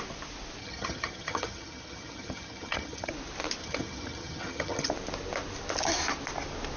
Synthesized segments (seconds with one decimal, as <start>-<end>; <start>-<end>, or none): 0.6-3.1; 3.6-4.9